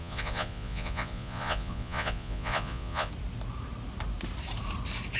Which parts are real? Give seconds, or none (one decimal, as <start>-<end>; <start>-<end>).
3.1-5.2